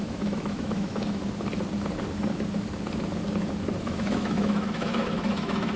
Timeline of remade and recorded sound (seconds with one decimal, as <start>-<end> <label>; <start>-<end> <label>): 0.0-1.2 remade; 1.2-3.8 recorded; 3.8-5.8 remade